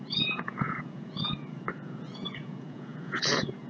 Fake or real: fake